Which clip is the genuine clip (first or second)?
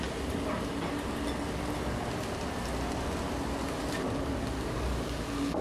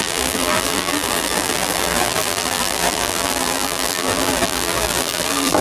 first